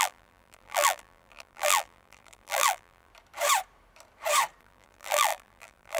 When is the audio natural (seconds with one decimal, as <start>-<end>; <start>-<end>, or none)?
3.1-4.6